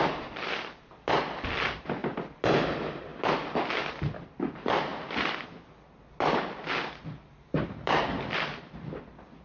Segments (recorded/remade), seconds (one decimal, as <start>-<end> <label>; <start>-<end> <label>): 0.0-2.0 remade; 2.0-2.7 recorded; 2.7-3.1 remade; 3.1-3.7 recorded; 3.7-4.9 remade; 4.9-7.0 recorded; 7.0-9.4 remade